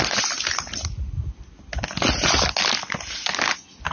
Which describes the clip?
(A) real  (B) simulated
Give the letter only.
A